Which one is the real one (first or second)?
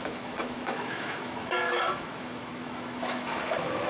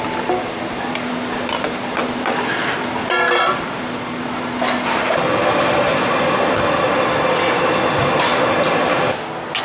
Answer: second